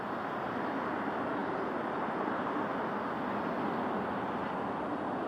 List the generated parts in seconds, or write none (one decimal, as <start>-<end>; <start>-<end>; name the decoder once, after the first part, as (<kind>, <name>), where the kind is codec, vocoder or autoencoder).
1.4-2.5 (vocoder, BigVGAN v2)